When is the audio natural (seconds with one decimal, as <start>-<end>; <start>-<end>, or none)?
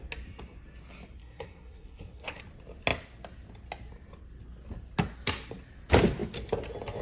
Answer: 0.0-1.2; 2.4-7.0